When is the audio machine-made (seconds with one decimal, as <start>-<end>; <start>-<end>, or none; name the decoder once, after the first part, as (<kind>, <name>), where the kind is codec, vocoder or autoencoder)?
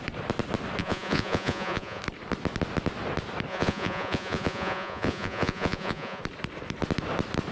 0.8-2.0 (vocoder, Vocos); 3.5-6.2